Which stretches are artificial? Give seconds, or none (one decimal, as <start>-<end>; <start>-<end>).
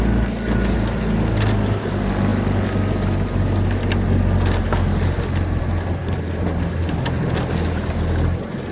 6.0-6.8